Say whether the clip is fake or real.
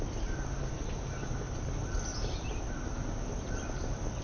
real